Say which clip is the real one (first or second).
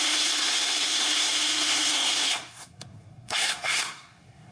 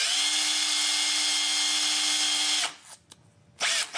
second